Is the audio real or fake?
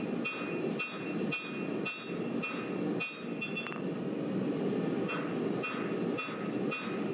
real